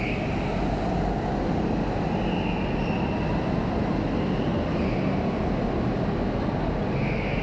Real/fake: real